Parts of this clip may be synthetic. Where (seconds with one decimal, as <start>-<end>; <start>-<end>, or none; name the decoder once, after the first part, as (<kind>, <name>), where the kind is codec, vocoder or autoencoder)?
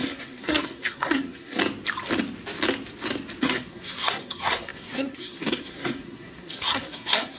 0.0-1.6 (codec, SNAC); 3.4-7.4